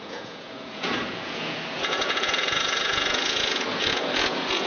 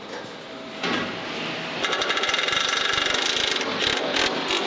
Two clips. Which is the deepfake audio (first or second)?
first